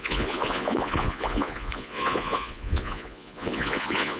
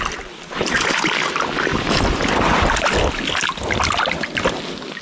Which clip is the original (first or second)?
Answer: second